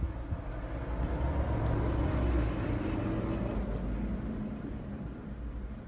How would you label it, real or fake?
real